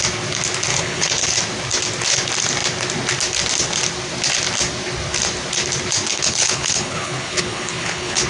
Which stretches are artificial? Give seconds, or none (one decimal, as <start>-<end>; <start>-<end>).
0.7-1.3; 6.1-8.3

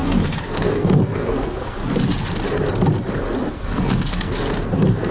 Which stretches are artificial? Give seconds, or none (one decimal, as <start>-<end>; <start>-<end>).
0.0-1.8; 3.5-5.1